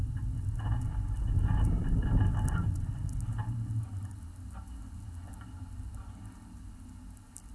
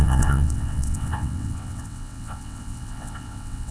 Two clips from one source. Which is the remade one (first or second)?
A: second